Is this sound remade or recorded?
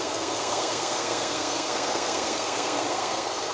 remade